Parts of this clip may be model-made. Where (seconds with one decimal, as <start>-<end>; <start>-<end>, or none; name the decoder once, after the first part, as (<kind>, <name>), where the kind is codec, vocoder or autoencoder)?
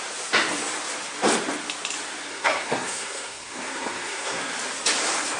2.3-4.4 (codec, SNAC)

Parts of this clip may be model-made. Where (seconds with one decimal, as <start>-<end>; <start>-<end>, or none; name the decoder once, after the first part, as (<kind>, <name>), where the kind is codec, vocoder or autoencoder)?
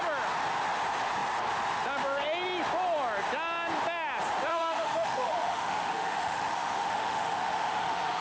4.5-8.2 (autoencoder, DAC-VAE)